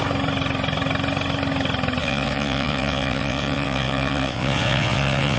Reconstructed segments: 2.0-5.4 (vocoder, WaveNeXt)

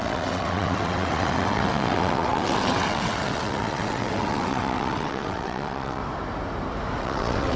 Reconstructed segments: 0.0-6.0 (vocoder, WaveNeXt); 7.0-7.6

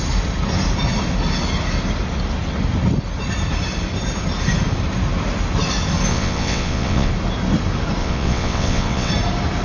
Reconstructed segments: 6.1-7.1 (vocoder, WaveNeXt); 8.0-9.1